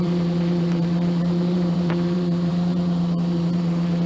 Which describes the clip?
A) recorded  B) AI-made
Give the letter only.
B